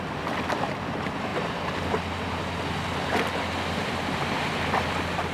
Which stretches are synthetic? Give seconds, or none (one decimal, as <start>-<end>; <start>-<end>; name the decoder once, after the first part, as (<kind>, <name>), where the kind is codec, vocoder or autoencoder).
none